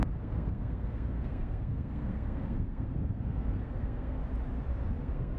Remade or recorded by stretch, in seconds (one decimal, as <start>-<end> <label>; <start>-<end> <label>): 0.0-4.2 remade; 4.2-5.0 recorded; 5.0-5.4 remade

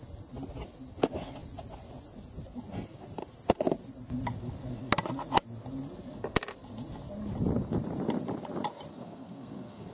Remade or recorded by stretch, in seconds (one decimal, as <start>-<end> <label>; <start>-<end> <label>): 0.0-8.9 recorded; 8.9-9.9 remade

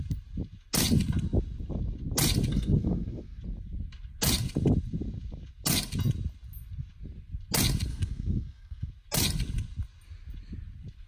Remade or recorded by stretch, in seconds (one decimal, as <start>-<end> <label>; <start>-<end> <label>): 0.0-2.5 recorded; 2.5-3.4 remade; 3.4-7.9 recorded; 7.9-8.9 remade; 8.9-11.1 recorded

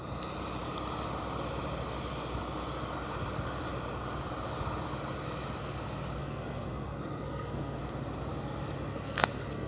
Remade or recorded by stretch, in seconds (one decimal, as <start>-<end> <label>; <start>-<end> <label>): 0.0-6.2 recorded; 6.2-7.8 remade; 7.8-8.9 recorded; 8.9-9.7 remade

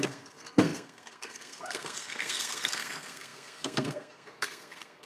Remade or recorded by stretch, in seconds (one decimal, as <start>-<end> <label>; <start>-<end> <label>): 0.0-5.1 remade

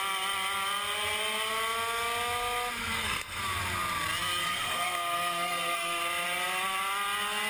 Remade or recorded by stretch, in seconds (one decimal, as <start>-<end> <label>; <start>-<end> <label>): 0.0-2.8 recorded; 2.8-3.4 remade; 3.4-4.4 recorded; 4.4-6.0 remade; 6.0-7.5 recorded